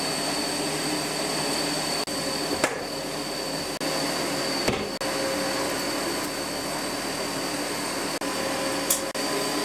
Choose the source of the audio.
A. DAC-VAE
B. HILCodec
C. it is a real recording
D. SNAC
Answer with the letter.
C